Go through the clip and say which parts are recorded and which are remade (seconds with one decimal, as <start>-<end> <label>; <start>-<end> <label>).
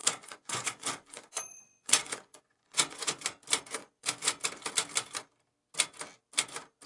0.0-3.2 remade; 3.2-3.8 recorded; 3.8-4.4 remade; 4.4-6.9 recorded